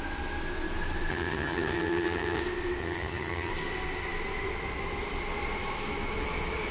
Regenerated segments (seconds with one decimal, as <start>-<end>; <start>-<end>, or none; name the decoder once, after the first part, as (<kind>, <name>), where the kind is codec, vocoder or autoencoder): 1.1-2.4 (vocoder, HiFi-GAN); 2.8-3.5